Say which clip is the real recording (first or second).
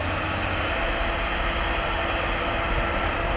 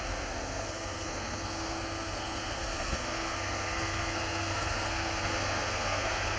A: first